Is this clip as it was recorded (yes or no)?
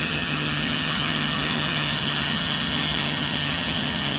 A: no